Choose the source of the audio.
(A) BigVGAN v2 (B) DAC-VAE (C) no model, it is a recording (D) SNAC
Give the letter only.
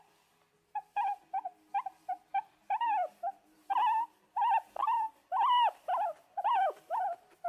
C